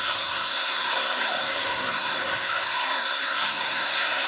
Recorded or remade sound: remade